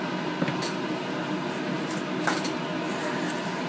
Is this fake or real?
real